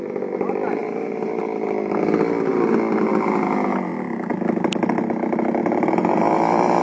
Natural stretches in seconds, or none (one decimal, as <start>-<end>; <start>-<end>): 0.0-0.8; 1.4-5.6